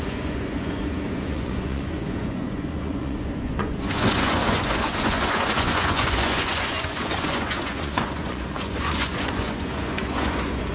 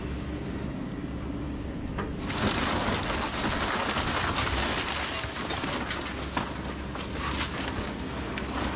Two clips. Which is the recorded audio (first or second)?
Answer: second